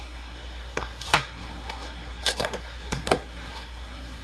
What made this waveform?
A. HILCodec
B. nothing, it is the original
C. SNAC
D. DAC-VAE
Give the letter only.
C